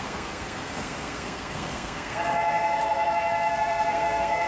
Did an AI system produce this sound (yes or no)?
yes